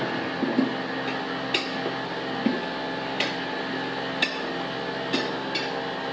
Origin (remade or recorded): recorded